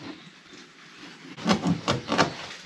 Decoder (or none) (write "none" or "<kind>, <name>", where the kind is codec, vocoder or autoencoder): none